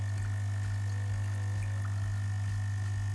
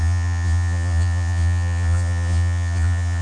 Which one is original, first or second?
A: first